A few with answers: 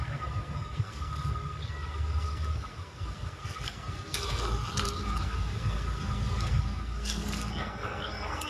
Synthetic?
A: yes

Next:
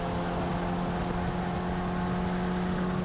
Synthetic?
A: no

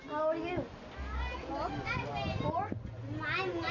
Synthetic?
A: no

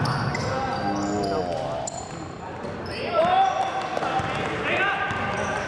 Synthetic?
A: no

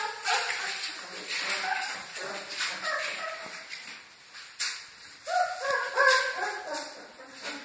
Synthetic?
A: no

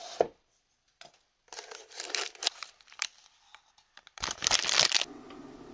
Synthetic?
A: no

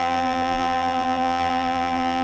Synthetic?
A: yes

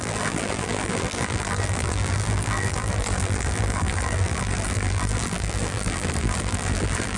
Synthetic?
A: yes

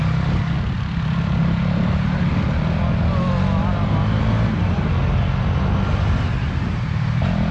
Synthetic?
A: no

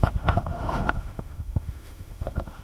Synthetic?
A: yes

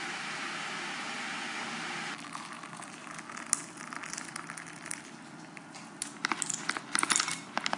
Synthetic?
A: no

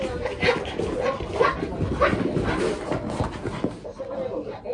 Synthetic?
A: no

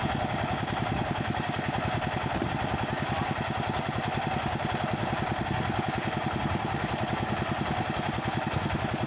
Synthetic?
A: no